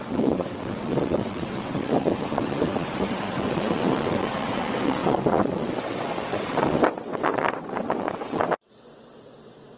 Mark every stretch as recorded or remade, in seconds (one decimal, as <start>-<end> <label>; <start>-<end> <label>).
0.0-9.8 remade